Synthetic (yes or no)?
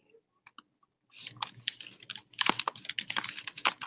no